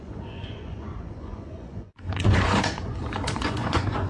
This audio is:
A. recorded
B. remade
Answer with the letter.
B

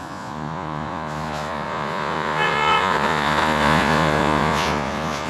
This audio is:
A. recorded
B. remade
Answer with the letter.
B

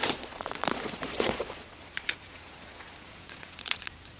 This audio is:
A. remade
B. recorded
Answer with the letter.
A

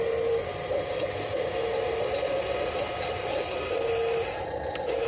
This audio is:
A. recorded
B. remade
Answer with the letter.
A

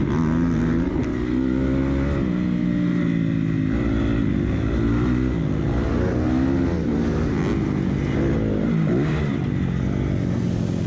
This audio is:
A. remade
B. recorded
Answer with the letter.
B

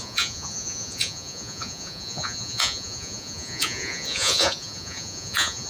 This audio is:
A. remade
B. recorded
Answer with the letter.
A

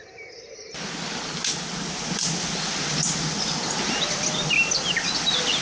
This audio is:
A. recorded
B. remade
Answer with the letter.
A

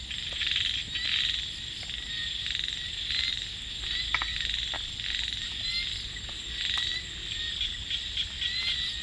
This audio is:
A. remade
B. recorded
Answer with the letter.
B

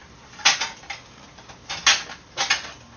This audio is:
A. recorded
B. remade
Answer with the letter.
A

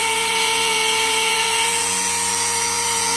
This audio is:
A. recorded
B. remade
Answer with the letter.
B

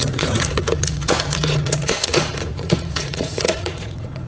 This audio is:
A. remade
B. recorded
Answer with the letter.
A